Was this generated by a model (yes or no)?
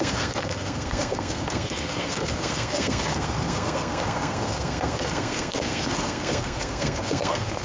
yes